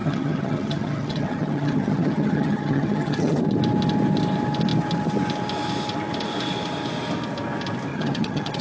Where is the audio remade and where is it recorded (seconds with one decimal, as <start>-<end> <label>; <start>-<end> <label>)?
0.0-3.4 remade; 3.4-7.9 recorded; 7.9-8.6 remade